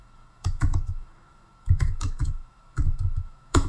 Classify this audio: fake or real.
fake